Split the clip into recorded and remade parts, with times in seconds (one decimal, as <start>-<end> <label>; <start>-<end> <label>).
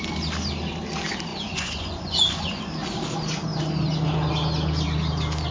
0.0-1.3 recorded; 1.3-2.6 remade; 2.6-5.5 recorded